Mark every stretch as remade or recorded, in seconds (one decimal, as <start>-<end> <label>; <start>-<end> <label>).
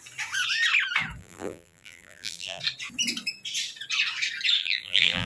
0.0-1.2 recorded; 1.2-2.6 remade; 2.6-4.6 recorded; 4.6-5.3 remade